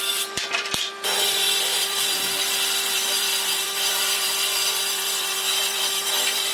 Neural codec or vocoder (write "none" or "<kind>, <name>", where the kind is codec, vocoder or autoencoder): vocoder, BigVGAN v2